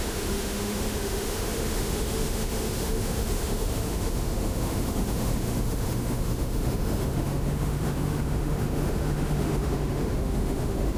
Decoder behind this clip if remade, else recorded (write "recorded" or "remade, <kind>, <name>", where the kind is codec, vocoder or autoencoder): remade, autoencoder, DAC-VAE